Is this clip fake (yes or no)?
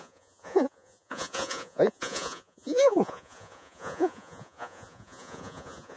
yes